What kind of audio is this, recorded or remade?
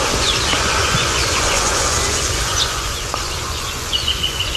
remade